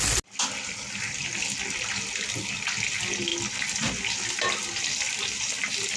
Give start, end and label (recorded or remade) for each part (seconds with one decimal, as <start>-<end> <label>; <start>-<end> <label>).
0.0-6.0 recorded